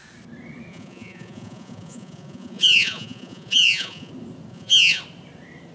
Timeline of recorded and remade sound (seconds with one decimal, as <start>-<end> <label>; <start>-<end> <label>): 0.0-0.7 recorded; 0.7-4.1 remade; 4.1-4.5 recorded; 4.5-5.0 remade; 5.0-5.7 recorded